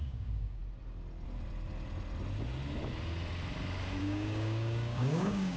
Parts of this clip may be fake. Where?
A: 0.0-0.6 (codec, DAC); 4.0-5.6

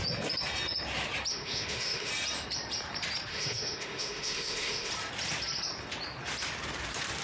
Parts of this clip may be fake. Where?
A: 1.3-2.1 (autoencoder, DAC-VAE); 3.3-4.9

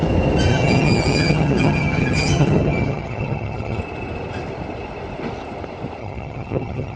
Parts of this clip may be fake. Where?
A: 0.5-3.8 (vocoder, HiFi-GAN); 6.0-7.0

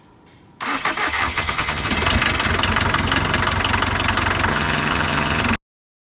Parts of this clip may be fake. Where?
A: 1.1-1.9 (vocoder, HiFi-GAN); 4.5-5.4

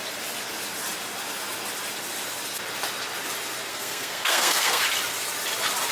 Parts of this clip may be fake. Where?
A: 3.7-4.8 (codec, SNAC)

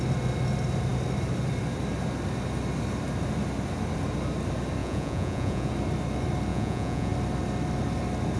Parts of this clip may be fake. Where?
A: 4.8-5.7 (vocoder, Vocos); 6.5-7.1